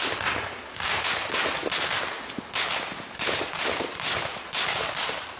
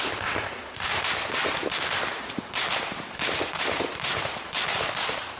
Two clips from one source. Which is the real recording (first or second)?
first